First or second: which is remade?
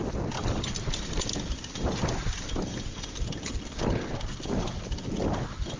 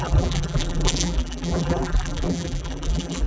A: second